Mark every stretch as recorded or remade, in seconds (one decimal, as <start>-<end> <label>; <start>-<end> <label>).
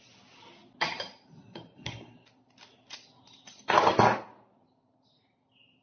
0.0-5.8 recorded